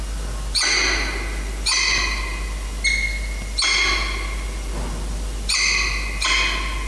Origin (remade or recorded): recorded